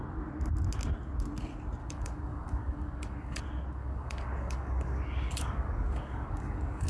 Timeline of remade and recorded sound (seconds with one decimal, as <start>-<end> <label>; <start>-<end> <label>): 0.0-1.8 recorded; 1.8-3.4 remade; 3.4-3.8 recorded; 3.8-6.9 remade